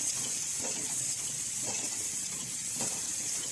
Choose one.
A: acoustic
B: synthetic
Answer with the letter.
B